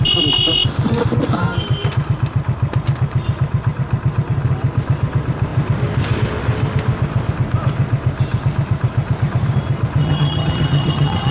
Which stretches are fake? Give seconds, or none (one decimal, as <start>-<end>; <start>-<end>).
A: 10.0-11.3